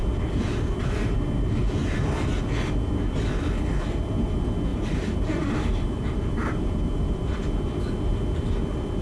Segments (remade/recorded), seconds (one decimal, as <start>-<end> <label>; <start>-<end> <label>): 0.0-4.7 recorded; 4.7-7.3 remade; 7.3-9.0 recorded